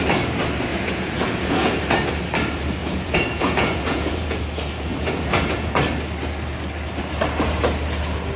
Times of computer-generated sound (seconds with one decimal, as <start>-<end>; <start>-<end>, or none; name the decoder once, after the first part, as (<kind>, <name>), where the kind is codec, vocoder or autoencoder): 0.7-1.7 (vocoder, Vocos); 2.8-4.4; 4.9-5.8